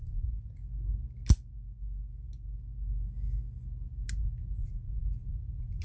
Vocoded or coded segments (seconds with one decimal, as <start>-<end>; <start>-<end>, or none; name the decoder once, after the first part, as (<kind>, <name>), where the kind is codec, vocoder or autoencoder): 0.0-0.6 (vocoder, Vocos); 4.1-5.8